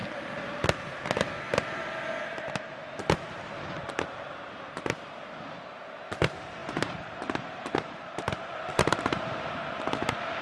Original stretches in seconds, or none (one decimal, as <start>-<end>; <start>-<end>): 0.0-3.2